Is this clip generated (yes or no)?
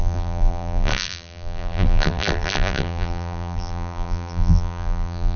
yes